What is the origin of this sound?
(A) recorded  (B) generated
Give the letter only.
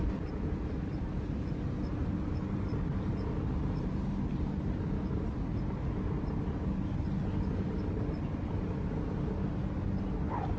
A